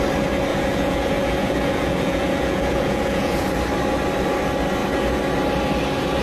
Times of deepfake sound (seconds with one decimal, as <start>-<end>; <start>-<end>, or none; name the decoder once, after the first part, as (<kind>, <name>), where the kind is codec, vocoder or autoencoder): 0.5-3.5 (vocoder, Vocos)